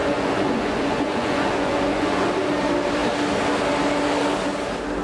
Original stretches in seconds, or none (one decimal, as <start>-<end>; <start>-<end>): 2.3-5.0